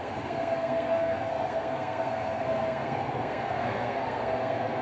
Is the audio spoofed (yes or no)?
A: yes